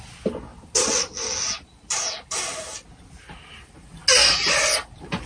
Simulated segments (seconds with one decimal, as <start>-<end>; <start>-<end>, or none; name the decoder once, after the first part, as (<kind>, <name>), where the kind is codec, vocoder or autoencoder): none